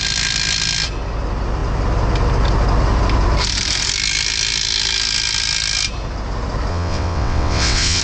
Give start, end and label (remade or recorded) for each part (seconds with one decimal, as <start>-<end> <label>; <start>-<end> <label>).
0.0-6.7 recorded; 6.7-8.0 remade